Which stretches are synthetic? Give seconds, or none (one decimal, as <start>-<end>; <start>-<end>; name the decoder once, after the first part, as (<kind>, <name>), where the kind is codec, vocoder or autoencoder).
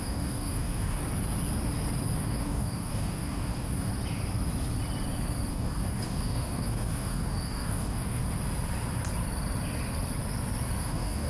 0.0-1.0 (codec, DAC); 2.2-3.9; 5.5-8.2; 10.8-11.3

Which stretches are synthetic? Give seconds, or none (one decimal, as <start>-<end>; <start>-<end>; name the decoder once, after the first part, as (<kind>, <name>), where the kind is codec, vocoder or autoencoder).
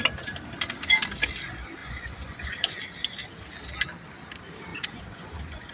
1.8-2.8 (vocoder, Vocos); 4.7-5.7